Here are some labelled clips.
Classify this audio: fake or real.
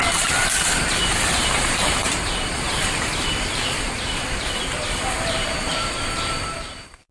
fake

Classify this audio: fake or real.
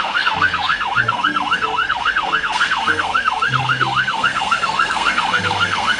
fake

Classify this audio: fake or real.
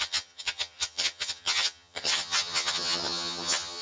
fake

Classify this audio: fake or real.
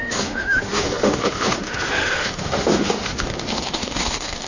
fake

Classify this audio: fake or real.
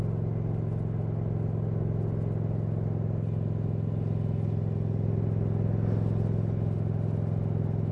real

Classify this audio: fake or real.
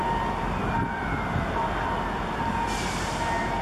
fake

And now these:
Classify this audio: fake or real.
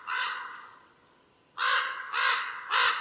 real